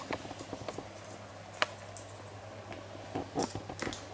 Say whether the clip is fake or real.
real